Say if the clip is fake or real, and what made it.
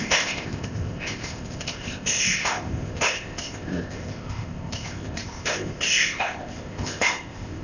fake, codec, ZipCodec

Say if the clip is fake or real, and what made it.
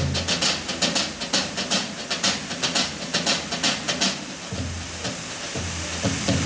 real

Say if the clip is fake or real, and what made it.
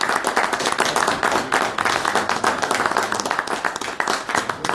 real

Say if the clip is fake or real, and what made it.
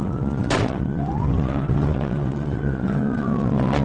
fake, vocoder, WaveNeXt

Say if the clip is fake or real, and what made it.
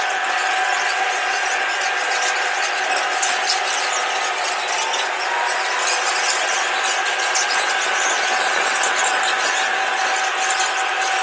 real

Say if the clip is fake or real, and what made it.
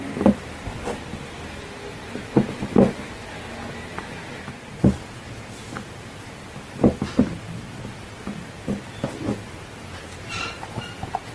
real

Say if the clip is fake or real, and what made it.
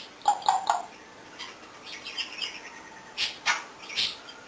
real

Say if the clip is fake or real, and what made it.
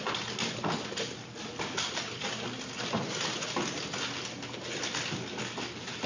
real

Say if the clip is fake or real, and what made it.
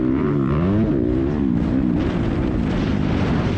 real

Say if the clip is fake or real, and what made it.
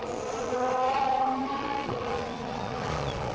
fake, vocoder, Vocos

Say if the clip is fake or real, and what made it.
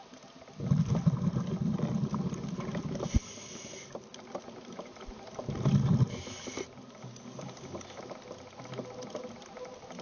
real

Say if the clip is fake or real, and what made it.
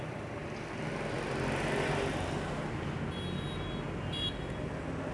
real